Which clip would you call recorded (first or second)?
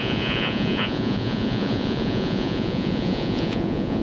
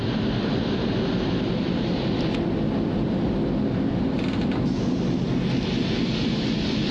second